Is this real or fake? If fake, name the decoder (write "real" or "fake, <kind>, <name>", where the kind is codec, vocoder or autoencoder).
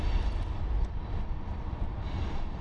fake, vocoder, BigVGAN v2